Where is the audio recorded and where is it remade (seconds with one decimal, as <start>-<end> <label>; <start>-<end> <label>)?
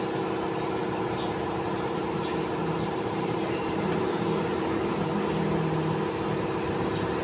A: 0.0-0.8 recorded; 0.8-5.1 remade; 5.1-7.2 recorded